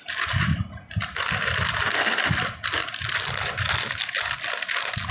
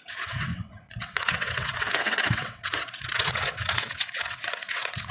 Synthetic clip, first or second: second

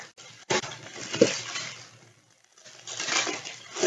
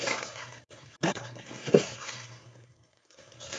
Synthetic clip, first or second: second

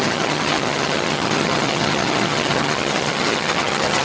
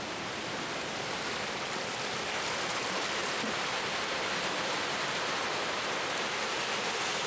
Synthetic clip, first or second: first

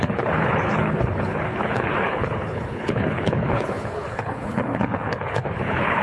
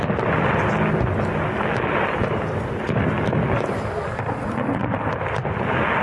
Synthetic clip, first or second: first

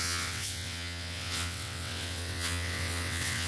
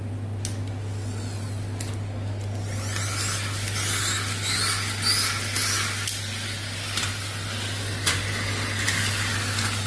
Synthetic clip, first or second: first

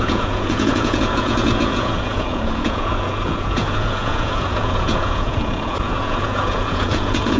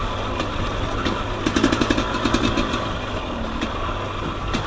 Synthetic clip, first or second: first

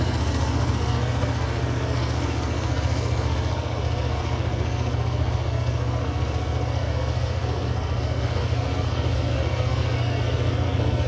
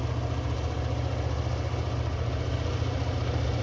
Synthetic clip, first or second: first